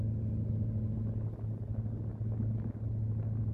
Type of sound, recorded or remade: recorded